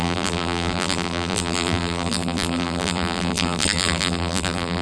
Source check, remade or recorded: remade